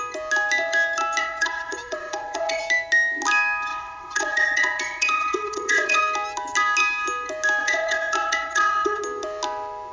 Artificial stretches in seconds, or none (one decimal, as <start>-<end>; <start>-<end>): 1.2-2.6; 3.7-6.0; 7.6-9.0